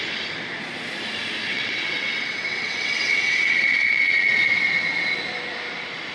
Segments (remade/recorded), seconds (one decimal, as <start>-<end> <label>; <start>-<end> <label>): 0.0-1.5 recorded; 1.5-5.2 remade; 5.2-6.1 recorded